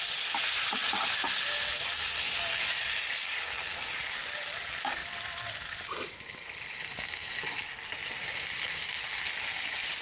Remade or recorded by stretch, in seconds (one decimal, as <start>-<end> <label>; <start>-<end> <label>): 0.0-8.2 recorded; 8.2-8.8 remade; 8.8-10.0 recorded